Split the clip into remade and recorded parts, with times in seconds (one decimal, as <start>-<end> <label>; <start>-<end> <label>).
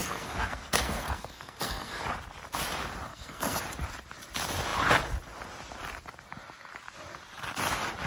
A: 0.0-2.0 remade; 2.0-3.1 recorded; 3.1-3.6 remade; 3.6-8.1 recorded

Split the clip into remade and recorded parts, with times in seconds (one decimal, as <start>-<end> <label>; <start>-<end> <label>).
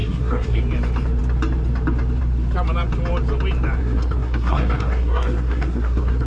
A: 0.0-0.6 remade; 0.6-3.8 recorded; 3.8-6.3 remade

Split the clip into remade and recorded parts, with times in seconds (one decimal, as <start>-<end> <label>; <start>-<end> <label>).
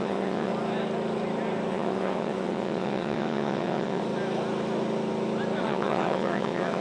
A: 0.0-0.5 remade; 0.5-1.7 recorded; 1.7-4.0 remade; 4.0-5.6 recorded; 5.6-6.8 remade